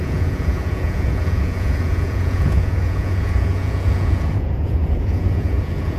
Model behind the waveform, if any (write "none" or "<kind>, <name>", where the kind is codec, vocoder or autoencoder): vocoder, Vocos